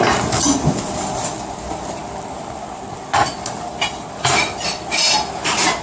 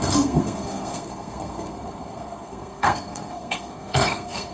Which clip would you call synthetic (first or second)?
second